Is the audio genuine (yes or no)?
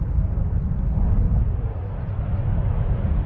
yes